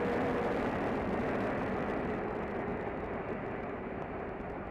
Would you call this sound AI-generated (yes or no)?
no